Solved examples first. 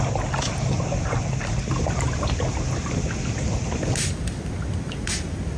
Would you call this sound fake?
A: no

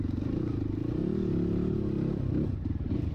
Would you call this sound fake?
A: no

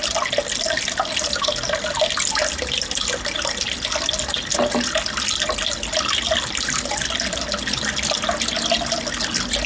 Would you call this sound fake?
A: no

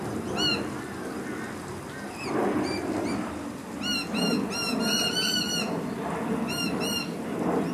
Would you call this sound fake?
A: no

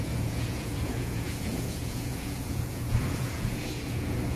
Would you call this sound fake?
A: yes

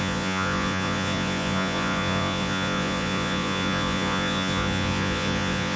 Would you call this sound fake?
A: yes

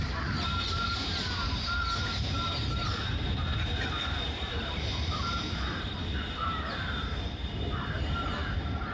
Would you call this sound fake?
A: yes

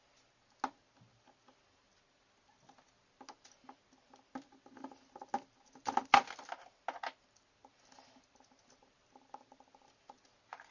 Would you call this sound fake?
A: no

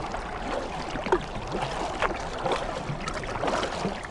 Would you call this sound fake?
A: no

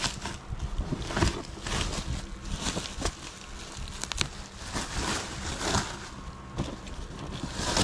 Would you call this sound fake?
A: no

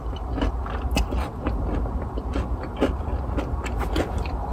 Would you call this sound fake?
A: no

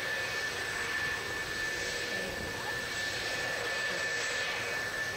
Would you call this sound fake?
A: yes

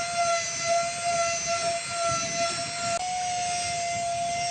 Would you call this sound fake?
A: no